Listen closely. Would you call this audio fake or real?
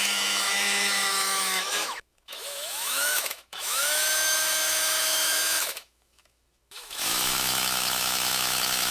fake